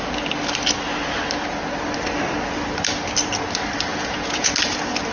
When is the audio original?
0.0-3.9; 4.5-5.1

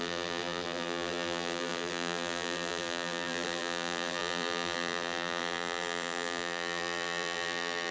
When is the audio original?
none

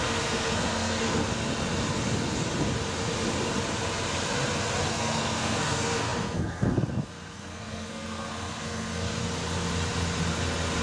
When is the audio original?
1.2-4.9; 9.2-10.8

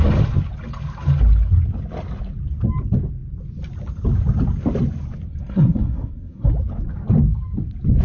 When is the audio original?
0.0-5.3; 6.5-8.0

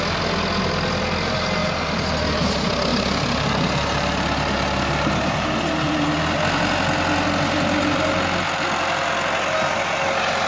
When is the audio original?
0.0-1.6; 2.5-2.9; 5.5-10.5